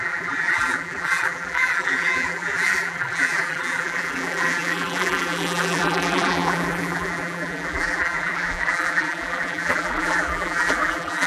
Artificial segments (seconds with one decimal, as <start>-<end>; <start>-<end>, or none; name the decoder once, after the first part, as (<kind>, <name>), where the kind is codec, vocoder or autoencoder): 0.0-11.3 (vocoder, BigVGAN v2)